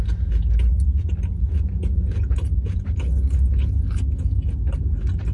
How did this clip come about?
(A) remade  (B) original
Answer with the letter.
B